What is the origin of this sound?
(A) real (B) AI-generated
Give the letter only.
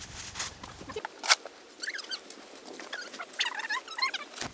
A